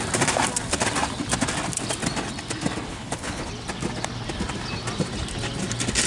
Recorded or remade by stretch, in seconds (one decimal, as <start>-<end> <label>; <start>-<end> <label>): 0.0-2.9 recorded; 2.9-3.5 remade; 3.5-6.1 recorded